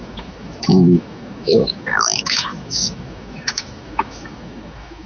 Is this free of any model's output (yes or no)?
no